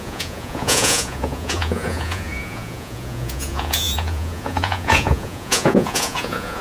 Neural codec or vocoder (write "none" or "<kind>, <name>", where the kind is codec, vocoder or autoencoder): vocoder, Vocos